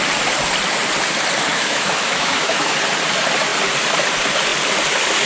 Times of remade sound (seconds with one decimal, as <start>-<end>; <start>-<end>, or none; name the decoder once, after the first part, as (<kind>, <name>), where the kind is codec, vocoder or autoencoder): 1.5-2.7 (autoencoder, DAC-VAE)